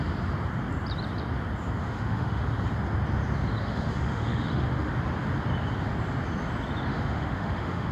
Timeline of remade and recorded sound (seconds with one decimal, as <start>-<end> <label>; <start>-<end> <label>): 0.0-1.8 recorded; 1.8-2.4 remade; 2.4-3.6 recorded; 3.6-4.9 remade; 4.9-6.9 recorded; 6.9-7.9 remade